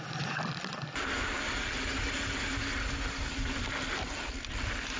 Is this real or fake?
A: real